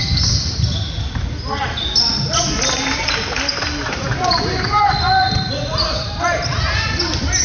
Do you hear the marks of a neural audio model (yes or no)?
no